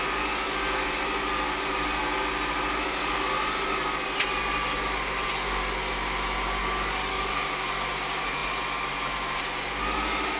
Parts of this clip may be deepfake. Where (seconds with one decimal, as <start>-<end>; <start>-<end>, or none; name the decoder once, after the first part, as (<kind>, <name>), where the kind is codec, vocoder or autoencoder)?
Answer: 6.6-7.2 (codec, DAC)